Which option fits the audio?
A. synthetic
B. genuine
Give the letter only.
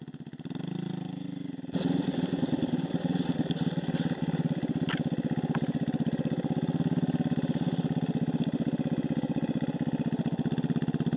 B